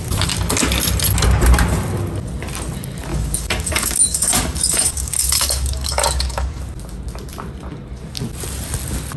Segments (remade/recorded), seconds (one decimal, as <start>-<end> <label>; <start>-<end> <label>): 0.0-3.1 recorded; 3.1-6.6 remade; 6.6-9.2 recorded

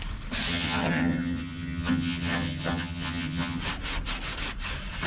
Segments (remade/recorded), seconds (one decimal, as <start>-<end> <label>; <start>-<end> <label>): 0.0-0.5 recorded; 0.5-3.6 remade; 3.6-5.1 recorded

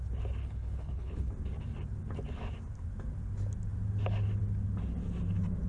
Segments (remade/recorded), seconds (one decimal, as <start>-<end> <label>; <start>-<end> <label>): 0.0-0.4 recorded; 0.4-1.3 remade; 1.3-5.7 recorded

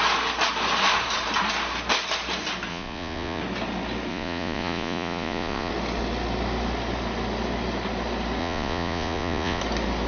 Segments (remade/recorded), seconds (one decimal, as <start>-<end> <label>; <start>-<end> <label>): 0.0-2.7 recorded; 2.7-3.4 remade; 3.4-4.1 recorded; 4.1-5.7 remade; 5.7-8.4 recorded; 8.4-9.6 remade; 9.6-10.1 recorded

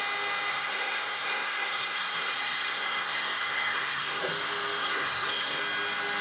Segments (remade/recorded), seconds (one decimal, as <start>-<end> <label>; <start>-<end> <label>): 0.0-0.5 recorded; 0.5-4.2 remade; 4.2-4.8 recorded; 4.8-5.6 remade; 5.6-6.2 recorded

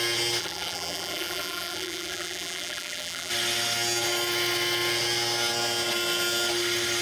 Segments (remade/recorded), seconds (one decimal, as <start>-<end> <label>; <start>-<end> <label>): 0.0-0.4 recorded; 0.4-3.3 remade; 3.3-7.0 recorded